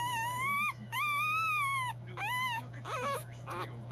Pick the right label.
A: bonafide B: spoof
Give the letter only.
B